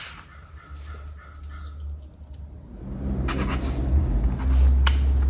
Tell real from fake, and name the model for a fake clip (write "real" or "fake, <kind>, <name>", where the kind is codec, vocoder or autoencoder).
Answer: real